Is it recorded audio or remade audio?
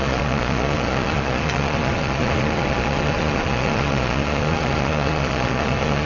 remade